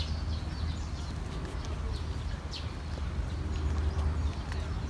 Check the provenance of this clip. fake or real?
real